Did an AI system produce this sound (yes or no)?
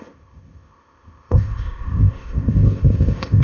yes